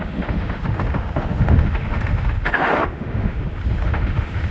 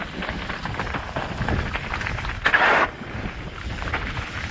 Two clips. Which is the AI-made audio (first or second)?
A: first